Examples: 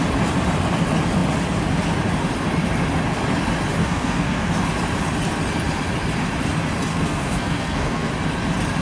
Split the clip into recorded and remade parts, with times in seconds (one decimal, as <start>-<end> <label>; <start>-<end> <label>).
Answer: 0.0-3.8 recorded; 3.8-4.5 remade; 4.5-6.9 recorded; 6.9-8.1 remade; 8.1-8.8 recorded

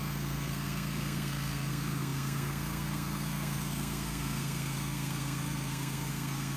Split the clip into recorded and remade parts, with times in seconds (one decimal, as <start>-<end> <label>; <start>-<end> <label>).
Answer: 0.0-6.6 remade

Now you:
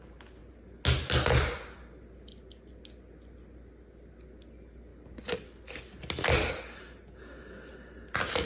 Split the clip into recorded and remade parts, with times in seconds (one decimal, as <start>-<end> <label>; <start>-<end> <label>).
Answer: 0.0-8.5 recorded